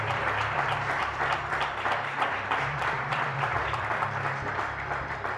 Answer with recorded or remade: remade